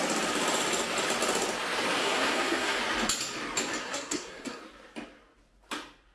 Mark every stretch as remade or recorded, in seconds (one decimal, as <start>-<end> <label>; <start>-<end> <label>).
0.0-2.0 recorded; 2.0-2.8 remade; 2.8-3.8 recorded; 3.8-4.6 remade; 4.6-6.1 recorded